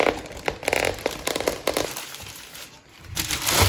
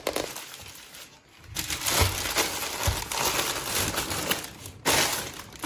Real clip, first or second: second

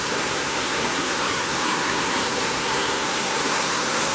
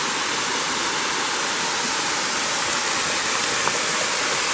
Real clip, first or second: second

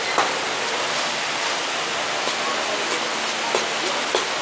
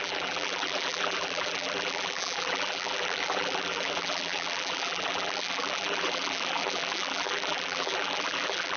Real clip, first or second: first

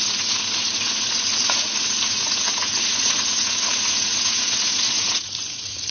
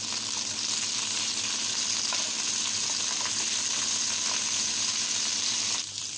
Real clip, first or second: second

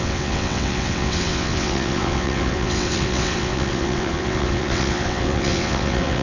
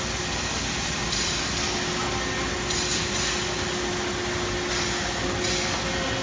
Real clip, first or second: second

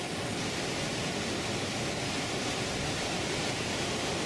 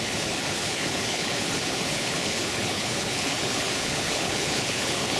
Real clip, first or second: first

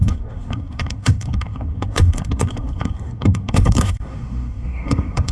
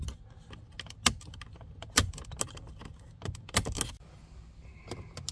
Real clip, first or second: second